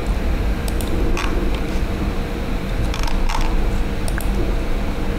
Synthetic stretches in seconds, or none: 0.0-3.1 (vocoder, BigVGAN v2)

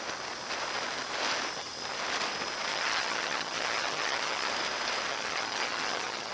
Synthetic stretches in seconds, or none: 2.7-4.5 (vocoder, HiFi-GAN); 5.1-6.3